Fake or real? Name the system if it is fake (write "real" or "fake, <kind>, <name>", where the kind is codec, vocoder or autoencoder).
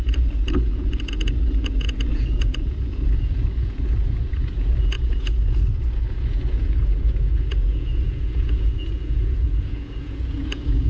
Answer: fake, vocoder, Vocos